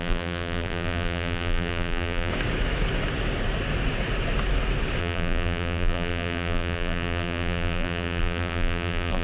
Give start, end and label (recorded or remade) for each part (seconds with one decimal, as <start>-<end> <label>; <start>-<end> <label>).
0.0-2.3 remade; 2.3-5.0 recorded; 5.0-9.2 remade